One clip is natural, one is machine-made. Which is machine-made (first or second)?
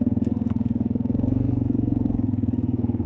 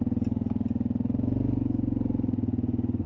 first